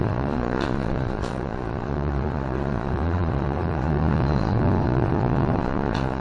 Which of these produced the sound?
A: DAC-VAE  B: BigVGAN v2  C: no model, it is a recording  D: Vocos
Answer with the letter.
D